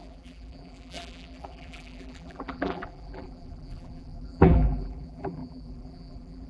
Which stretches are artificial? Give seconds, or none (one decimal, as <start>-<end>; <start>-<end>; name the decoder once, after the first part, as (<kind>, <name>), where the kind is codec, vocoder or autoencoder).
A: 0.0-6.5 (vocoder, BigVGAN v2)